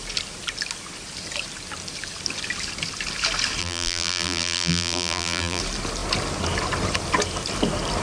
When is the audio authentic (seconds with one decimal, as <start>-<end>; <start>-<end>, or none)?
0.0-3.6; 5.6-8.0